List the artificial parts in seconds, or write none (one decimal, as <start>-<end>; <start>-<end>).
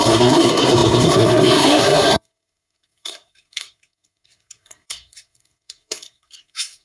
0.0-6.8